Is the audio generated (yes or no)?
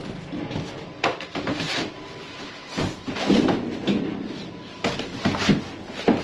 no